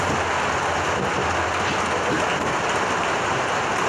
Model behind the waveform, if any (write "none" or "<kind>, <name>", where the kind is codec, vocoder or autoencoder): none